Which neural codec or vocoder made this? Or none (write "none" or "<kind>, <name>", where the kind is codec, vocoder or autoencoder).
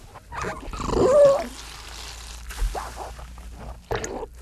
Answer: none